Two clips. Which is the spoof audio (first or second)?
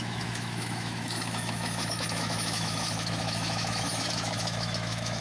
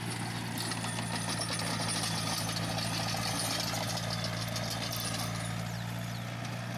first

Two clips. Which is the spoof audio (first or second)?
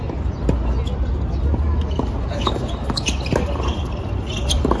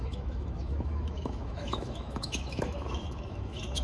second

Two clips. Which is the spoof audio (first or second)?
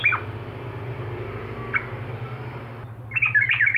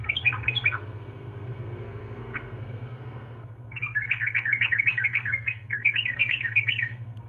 second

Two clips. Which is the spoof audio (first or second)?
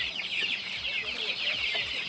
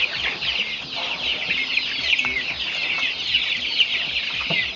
first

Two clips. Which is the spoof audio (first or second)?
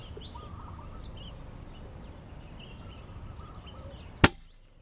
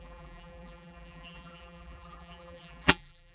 second